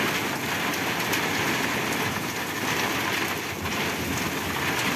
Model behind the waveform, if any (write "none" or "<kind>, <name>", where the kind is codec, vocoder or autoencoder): none